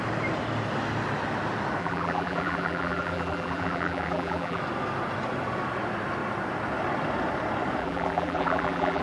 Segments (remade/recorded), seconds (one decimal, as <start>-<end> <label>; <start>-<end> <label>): 0.0-1.8 recorded; 1.8-4.6 remade; 4.6-7.8 recorded; 7.8-9.0 remade